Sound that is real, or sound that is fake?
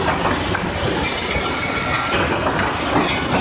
real